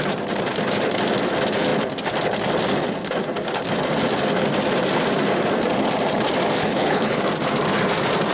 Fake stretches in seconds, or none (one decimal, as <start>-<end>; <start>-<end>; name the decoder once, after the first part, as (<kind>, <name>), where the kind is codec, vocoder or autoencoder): 6.6-7.2 (codec, HILCodec)